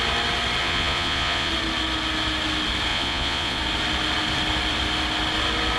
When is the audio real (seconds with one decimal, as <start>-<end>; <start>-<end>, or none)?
0.0-0.6; 1.5-2.9; 3.6-5.8